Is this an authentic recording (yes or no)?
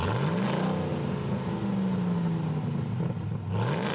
yes